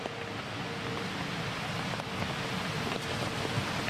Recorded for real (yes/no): yes